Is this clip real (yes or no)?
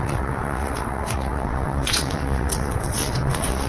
no